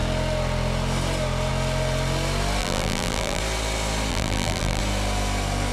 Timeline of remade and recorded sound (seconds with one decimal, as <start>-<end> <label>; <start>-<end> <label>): 0.0-2.6 recorded; 2.6-3.4 remade; 3.4-4.1 recorded; 4.1-4.8 remade; 4.8-5.7 recorded